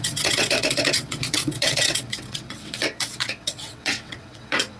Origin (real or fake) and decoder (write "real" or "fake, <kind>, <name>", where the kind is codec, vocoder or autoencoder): fake, vocoder, WaveNeXt